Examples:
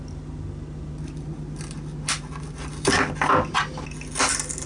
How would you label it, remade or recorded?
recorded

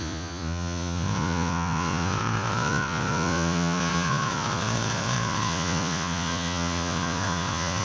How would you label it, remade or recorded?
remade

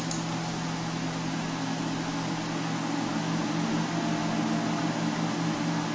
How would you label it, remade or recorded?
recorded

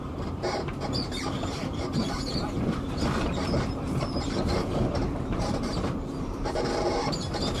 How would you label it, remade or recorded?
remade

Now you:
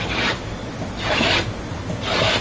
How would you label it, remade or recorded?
recorded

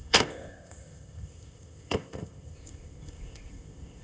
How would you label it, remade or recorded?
remade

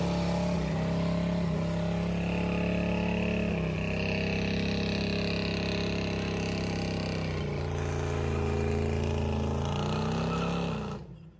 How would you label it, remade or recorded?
recorded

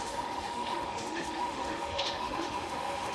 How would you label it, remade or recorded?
remade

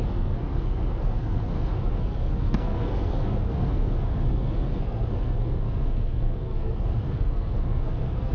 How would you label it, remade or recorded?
remade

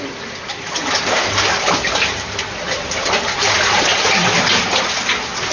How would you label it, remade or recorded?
recorded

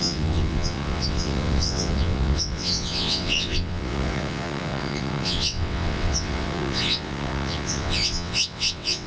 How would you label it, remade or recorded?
remade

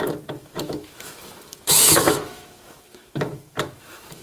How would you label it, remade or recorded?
remade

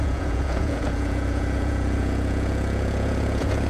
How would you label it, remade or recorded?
remade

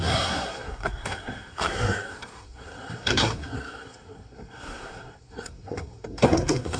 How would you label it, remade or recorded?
remade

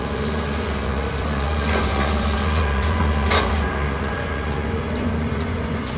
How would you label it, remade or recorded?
remade